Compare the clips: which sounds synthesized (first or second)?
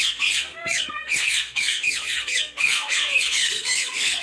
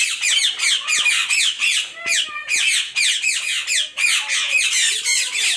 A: first